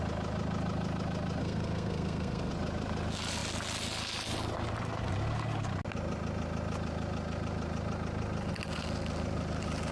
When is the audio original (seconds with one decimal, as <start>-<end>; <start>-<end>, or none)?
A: 0.0-1.4; 2.5-9.9